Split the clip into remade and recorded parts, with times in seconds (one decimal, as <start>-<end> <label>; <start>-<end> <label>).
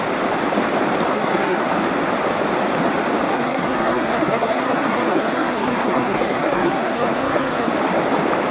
0.0-1.1 recorded; 1.1-1.7 remade; 1.7-3.3 recorded; 3.3-7.7 remade; 7.7-8.5 recorded